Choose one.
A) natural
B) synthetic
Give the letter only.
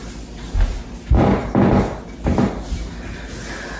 A